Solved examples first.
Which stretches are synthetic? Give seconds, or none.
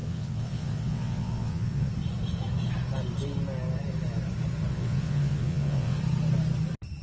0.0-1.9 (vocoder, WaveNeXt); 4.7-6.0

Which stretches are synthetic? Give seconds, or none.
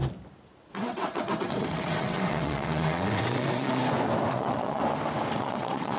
0.7-3.8 (vocoder, WaveNeXt); 4.3-4.8; 5.4-6.0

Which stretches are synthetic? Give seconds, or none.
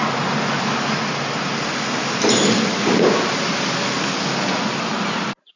none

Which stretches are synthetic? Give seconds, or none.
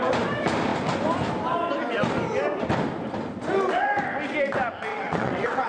4.9-5.7 (vocoder, WaveNeXt)